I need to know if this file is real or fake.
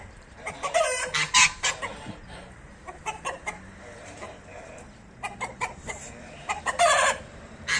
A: fake